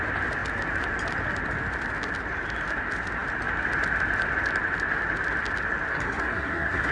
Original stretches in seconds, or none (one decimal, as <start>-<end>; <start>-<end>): 0.0-5.9